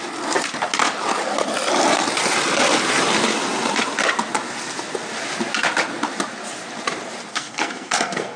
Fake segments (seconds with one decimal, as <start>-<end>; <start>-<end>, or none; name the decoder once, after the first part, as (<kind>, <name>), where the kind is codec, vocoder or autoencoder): 7.3-8.4 (codec, SNAC)